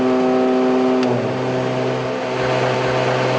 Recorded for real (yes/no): yes